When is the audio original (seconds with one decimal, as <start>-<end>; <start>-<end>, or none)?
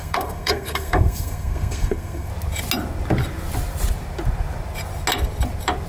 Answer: 2.3-5.9